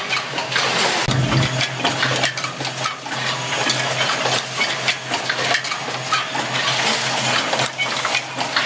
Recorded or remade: recorded